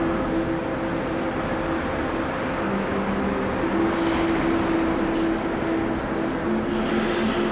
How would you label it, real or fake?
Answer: real